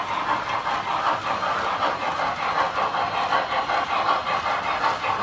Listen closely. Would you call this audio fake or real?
real